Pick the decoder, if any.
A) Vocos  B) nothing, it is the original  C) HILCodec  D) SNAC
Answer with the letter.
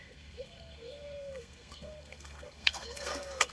D